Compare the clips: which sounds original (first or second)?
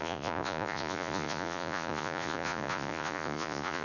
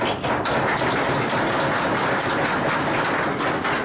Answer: second